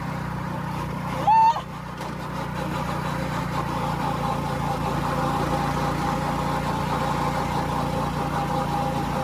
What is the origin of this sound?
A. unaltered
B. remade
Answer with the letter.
A